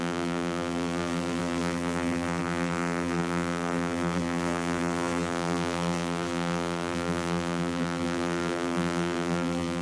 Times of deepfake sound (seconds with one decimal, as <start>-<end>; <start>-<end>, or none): 0.0-9.8